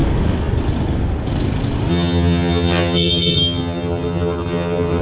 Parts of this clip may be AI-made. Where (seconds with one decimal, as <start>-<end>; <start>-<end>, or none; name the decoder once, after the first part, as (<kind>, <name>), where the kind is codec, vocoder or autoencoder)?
1.9-5.0 (vocoder, HiFi-GAN)